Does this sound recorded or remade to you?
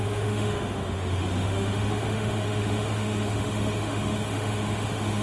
remade